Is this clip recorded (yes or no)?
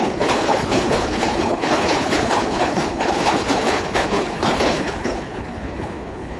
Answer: no